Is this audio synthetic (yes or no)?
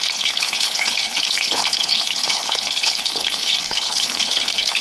yes